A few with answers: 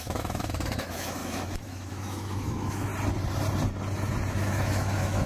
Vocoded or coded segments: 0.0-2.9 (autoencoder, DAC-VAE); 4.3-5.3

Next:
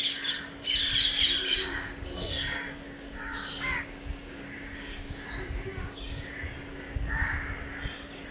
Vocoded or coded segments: 1.5-6.5 (codec, DAC)

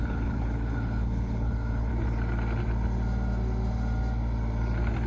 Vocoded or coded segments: 0.0-1.9 (codec, HILCodec)